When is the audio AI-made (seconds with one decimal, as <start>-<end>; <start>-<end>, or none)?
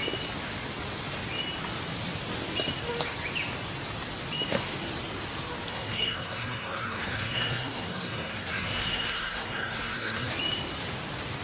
5.7-10.3